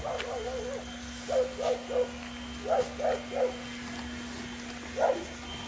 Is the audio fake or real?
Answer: real